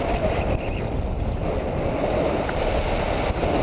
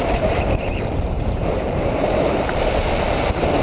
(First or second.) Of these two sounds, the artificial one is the second